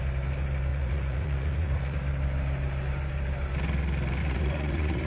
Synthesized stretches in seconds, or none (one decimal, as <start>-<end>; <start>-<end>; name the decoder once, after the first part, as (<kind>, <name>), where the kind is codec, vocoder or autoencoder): 0.7-2.0 (vocoder, Vocos); 4.2-5.1